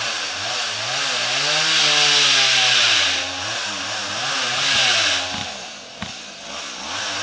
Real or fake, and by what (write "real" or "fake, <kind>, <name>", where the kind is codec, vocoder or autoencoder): real